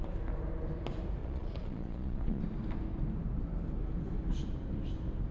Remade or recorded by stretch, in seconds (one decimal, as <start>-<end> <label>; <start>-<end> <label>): 0.0-1.2 recorded; 1.2-2.4 remade; 2.4-5.3 recorded